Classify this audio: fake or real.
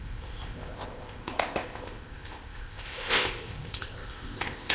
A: fake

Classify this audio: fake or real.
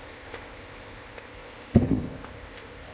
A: fake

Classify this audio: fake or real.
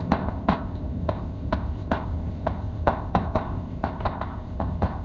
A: fake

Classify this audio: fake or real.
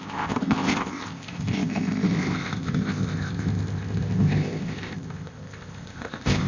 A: fake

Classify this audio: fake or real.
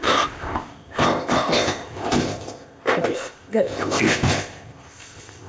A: fake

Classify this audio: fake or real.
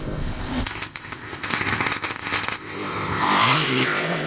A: fake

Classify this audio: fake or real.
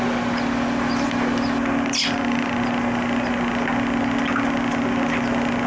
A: real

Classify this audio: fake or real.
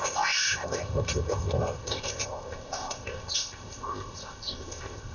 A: fake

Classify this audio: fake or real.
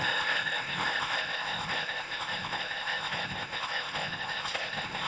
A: fake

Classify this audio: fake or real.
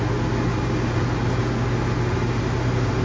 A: real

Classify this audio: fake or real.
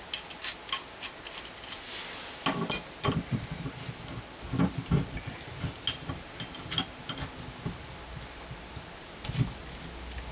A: real